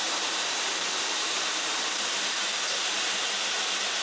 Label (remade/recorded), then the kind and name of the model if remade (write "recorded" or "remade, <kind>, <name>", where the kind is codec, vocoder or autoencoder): remade, vocoder, BigVGAN v2